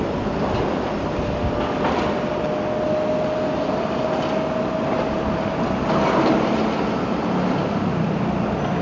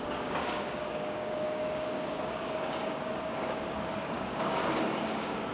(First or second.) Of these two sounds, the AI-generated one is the second